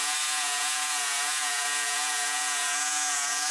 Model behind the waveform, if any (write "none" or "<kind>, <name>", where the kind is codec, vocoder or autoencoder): vocoder, Vocos